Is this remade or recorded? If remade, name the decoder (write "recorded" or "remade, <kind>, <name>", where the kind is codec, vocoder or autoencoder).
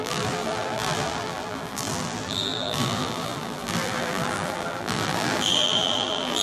remade, vocoder, BigVGAN v2